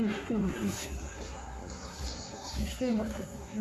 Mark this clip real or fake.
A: fake